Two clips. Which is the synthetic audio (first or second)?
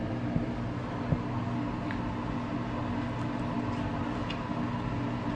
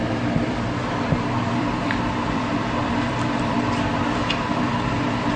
second